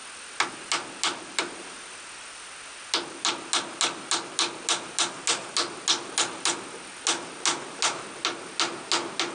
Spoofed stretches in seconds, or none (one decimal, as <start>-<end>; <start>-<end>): none